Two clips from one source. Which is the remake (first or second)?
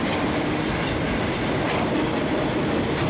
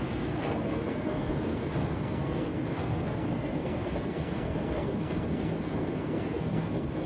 second